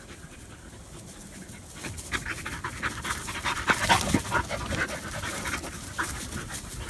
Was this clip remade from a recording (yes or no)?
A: no